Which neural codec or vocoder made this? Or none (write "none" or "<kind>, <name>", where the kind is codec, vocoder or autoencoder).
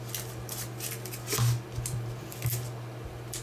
none